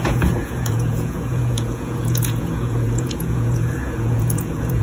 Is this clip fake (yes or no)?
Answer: yes